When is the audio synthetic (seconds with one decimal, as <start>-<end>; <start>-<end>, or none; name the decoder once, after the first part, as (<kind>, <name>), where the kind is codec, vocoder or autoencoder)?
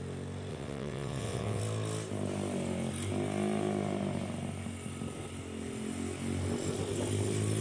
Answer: 0.5-1.6 (vocoder, WaveNeXt)